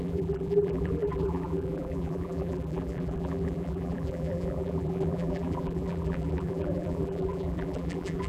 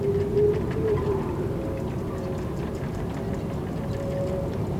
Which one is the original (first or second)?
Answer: second